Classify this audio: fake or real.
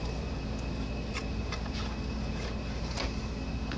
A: real